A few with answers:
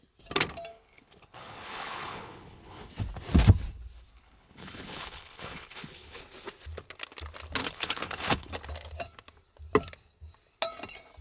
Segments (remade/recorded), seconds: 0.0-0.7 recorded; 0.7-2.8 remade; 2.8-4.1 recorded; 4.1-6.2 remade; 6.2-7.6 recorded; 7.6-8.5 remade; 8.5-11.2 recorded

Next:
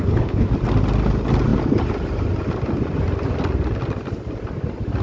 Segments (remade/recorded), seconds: 0.0-0.5 remade; 0.5-5.0 recorded

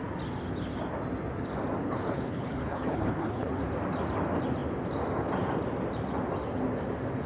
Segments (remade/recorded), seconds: 0.0-1.8 recorded; 1.8-3.6 remade; 3.6-7.3 recorded